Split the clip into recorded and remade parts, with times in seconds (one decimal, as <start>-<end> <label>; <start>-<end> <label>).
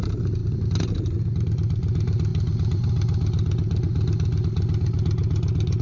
0.0-0.4 recorded; 0.4-1.2 remade; 1.2-5.8 recorded